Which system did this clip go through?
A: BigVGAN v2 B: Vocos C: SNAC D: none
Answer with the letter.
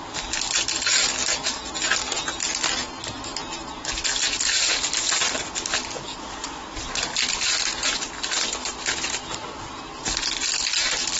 D